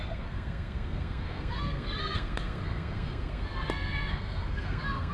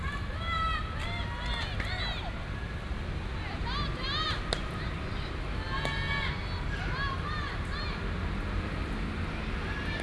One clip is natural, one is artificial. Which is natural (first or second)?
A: second